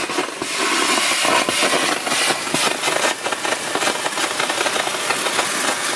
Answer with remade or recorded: recorded